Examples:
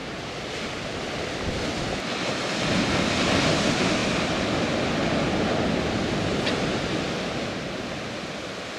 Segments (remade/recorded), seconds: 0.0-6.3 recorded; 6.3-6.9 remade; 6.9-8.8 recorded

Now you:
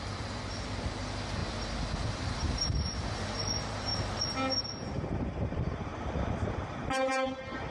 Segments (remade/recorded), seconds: 0.0-1.4 remade; 1.4-2.1 recorded; 2.1-5.9 remade; 5.9-6.5 recorded; 6.5-7.7 remade

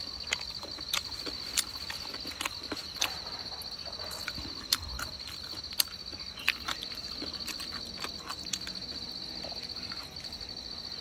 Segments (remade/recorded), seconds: 0.0-2.8 recorded; 2.8-3.5 remade; 3.5-11.0 recorded

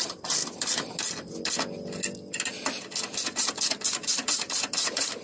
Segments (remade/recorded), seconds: 0.0-0.4 remade; 0.4-3.0 recorded; 3.0-5.2 remade

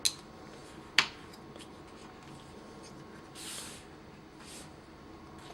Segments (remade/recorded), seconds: 0.0-5.5 recorded

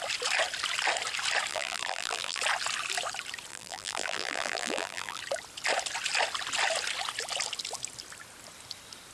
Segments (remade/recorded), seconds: 0.0-1.5 recorded; 1.5-2.4 remade; 2.4-3.5 recorded; 3.5-5.2 remade; 5.2-9.1 recorded

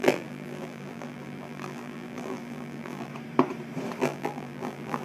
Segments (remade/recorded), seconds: 0.0-3.1 remade; 3.1-4.0 recorded; 4.0-5.0 remade